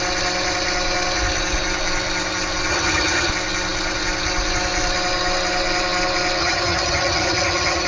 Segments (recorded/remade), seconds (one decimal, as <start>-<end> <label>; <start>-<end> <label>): 0.0-2.7 recorded; 2.7-3.3 remade; 3.3-6.4 recorded; 6.4-7.9 remade